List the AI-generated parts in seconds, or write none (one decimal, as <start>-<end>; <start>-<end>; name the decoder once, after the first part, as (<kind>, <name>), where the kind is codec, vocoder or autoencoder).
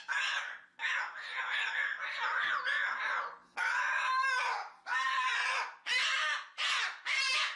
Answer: none